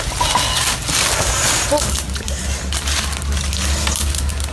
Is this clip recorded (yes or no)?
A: yes